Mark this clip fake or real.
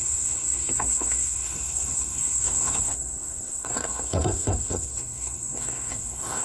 fake